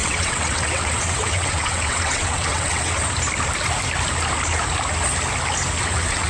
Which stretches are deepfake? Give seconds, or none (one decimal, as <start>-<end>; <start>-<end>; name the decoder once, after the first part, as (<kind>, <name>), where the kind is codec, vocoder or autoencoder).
0.0-3.0 (vocoder, WaveNeXt); 5.8-6.3